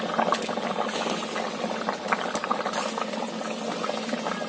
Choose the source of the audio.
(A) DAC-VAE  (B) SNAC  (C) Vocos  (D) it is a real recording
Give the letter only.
D